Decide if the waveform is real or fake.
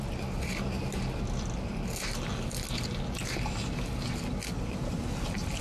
real